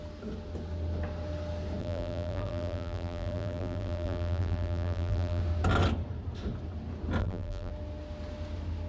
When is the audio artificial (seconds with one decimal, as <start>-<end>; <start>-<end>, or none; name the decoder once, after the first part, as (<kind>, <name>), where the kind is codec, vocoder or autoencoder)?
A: 1.8-5.4 (vocoder, BigVGAN v2); 7.2-7.7